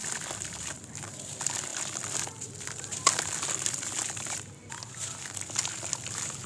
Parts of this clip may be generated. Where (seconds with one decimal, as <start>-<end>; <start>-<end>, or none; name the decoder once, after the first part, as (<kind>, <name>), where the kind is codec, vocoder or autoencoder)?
none